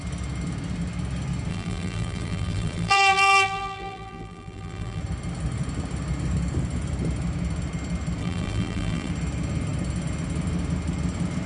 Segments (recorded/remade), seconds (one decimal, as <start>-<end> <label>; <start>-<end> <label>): 0.0-1.5 recorded; 1.5-5.0 remade; 5.0-8.2 recorded; 8.2-9.1 remade; 9.1-11.5 recorded